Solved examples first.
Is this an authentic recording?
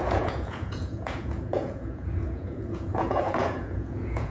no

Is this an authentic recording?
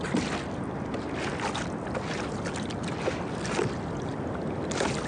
yes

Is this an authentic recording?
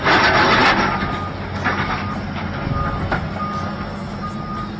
yes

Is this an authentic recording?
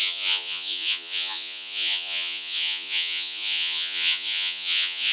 no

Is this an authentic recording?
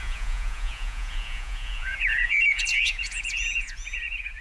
no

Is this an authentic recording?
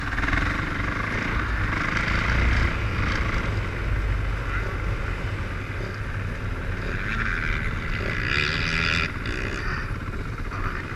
yes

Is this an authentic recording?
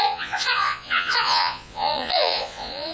no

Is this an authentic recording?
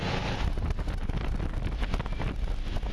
yes